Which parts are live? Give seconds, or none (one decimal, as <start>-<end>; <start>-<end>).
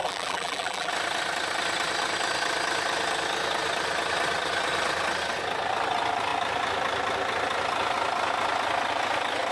0.9-9.5